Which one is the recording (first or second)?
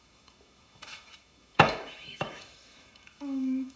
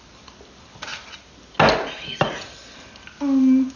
second